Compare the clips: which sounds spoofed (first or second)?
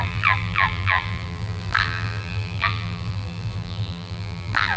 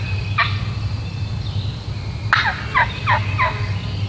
first